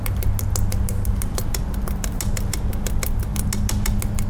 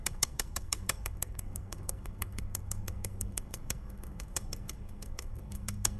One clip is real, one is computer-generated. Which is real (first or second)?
first